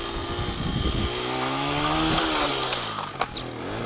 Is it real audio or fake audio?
real